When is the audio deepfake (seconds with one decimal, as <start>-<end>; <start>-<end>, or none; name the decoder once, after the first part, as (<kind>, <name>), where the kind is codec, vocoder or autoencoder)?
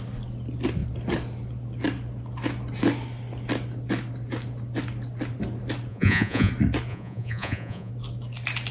5.9-6.5 (vocoder, Vocos); 6.9-7.9